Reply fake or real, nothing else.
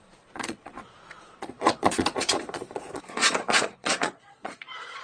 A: fake